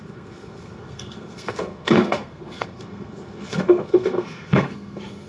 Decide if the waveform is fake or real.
fake